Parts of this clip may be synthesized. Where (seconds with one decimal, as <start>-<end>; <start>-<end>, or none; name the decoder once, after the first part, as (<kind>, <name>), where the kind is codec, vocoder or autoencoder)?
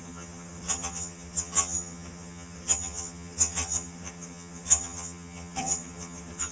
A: 0.0-6.5 (vocoder, HiFi-GAN)